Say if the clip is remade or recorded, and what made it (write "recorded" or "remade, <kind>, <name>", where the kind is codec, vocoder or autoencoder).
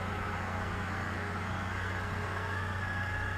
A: remade, codec, SNAC